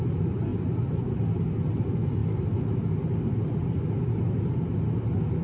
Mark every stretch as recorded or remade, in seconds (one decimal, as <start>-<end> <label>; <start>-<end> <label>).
0.0-5.4 recorded